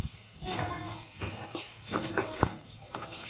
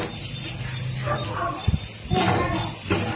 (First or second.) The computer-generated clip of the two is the first